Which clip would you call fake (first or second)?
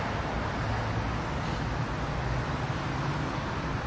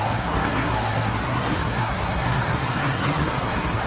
second